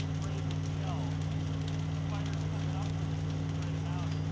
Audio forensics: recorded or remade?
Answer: recorded